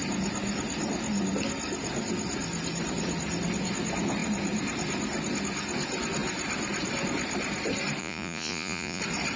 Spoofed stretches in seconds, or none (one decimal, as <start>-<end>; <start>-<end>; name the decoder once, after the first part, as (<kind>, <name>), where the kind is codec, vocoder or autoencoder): 8.0-9.0 (vocoder, Vocos)

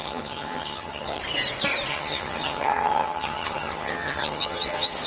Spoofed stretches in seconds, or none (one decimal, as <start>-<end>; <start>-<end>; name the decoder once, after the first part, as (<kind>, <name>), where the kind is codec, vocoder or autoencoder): 0.0-1.2 (vocoder, HiFi-GAN); 1.9-5.1

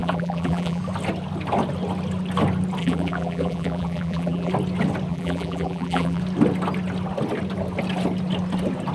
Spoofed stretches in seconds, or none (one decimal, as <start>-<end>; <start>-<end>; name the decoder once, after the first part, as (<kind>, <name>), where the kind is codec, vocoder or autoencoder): 0.0-0.8 (vocoder, BigVGAN v2); 2.8-4.5; 5.1-6.2

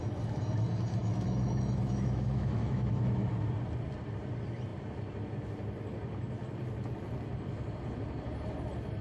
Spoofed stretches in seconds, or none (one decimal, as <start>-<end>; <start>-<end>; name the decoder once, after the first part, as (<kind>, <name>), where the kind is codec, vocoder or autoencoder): 1.0-3.3 (autoencoder, DAC-VAE)

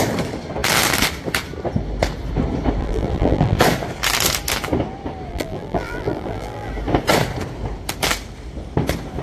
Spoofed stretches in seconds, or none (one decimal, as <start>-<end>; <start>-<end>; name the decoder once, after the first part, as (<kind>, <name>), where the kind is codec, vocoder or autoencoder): 2.8-3.6 (vocoder, BigVGAN v2); 5.3-6.7

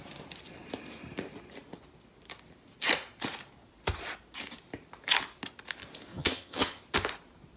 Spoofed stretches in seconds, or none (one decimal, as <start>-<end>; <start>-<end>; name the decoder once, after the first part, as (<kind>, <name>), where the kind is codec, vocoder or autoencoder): 6.1-6.8 (vocoder, HiFi-GAN)